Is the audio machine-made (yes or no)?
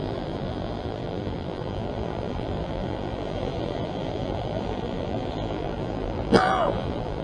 yes